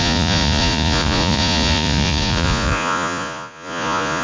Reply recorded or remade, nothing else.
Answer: remade